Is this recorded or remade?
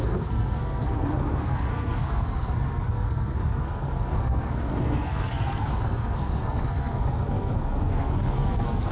remade